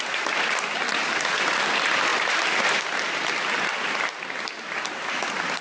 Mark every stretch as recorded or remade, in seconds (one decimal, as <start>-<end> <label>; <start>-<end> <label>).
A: 0.0-5.6 recorded